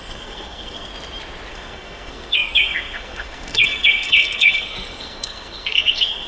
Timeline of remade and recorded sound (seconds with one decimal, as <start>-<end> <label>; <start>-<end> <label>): 0.0-0.9 remade; 0.9-1.5 recorded; 1.5-6.3 remade